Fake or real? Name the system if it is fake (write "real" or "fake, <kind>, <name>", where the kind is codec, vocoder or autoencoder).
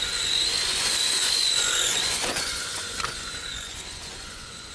fake, vocoder, Vocos